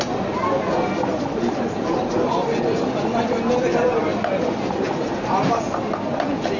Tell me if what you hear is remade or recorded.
recorded